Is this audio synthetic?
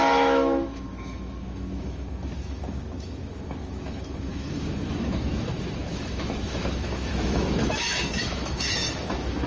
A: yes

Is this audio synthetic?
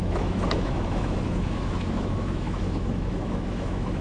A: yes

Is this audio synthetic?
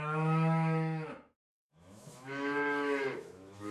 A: yes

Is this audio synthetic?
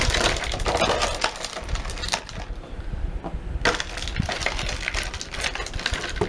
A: no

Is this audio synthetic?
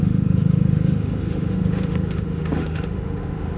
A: yes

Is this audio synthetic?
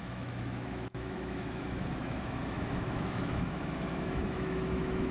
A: yes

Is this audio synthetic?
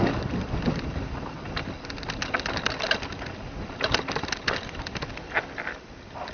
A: no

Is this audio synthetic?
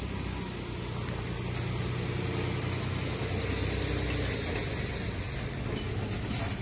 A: no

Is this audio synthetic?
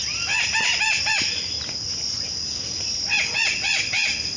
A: no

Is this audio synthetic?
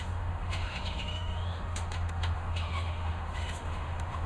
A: yes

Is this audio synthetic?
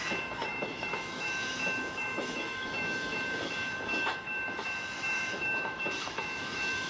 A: yes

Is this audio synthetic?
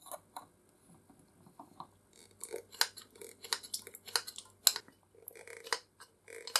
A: no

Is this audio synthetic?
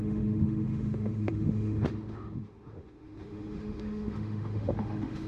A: yes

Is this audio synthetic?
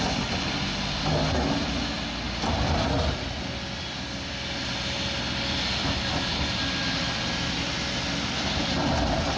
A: no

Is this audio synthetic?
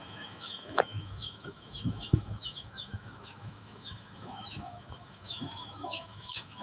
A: yes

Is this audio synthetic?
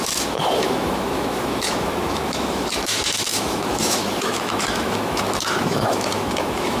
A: yes